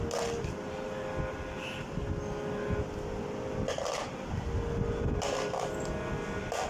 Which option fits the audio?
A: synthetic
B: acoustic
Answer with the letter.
B